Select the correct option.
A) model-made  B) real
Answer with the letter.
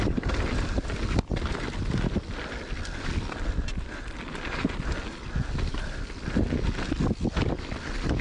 B